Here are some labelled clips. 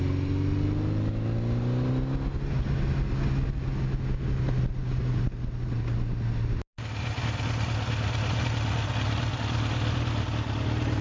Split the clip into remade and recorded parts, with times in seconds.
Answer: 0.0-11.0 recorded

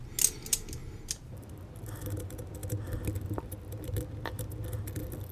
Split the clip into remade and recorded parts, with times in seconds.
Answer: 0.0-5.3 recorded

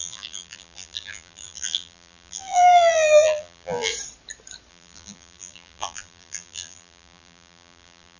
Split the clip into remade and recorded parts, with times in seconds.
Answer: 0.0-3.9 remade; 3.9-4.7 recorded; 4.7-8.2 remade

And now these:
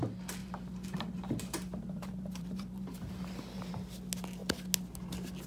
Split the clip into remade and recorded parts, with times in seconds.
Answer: 0.0-0.4 recorded; 0.4-3.7 remade; 3.7-5.5 recorded

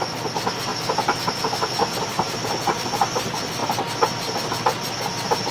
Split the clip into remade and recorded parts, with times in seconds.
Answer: 0.0-2.1 recorded; 2.1-2.6 remade; 2.6-5.5 recorded